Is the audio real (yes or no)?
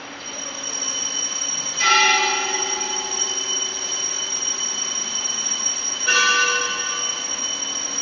yes